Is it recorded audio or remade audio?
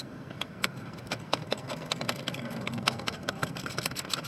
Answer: remade